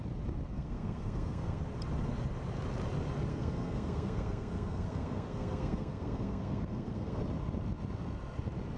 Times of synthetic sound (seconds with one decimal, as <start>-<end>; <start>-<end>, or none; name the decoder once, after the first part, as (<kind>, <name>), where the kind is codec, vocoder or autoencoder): 0.5-1.6 (codec, SNAC); 3.3-7.2